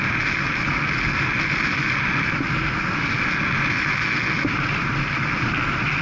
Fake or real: real